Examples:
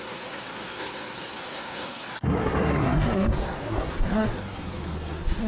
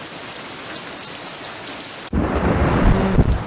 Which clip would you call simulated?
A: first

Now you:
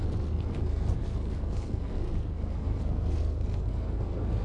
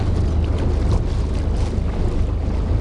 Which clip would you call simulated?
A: first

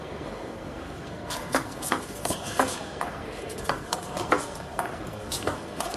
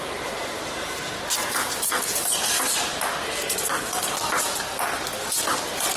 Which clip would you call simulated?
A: first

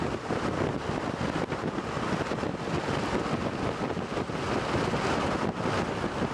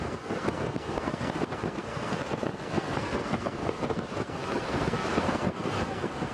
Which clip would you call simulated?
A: second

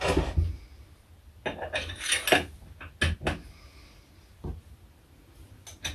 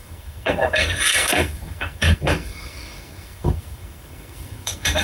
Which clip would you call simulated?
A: second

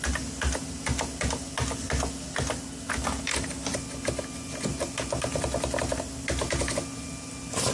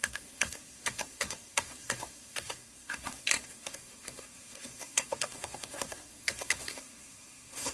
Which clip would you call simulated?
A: second